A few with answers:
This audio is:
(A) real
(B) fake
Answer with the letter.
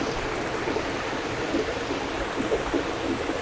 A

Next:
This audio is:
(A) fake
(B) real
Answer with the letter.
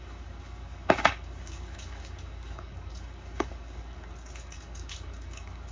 A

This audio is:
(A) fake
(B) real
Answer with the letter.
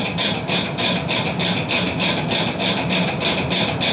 B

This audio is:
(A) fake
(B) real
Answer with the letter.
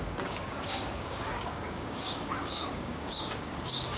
A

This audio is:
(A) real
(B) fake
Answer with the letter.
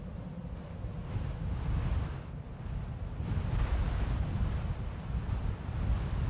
A